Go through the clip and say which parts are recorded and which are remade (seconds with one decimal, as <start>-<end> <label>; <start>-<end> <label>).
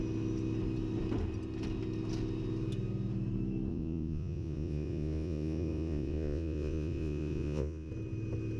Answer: 0.0-3.7 recorded; 3.7-7.9 remade; 7.9-8.6 recorded